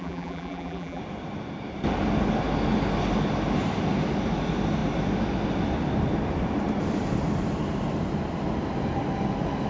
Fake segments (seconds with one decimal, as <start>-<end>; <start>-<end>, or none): 0.0-1.0